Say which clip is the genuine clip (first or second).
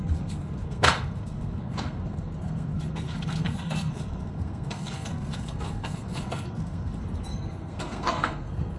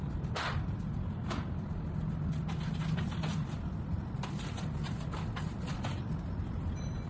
second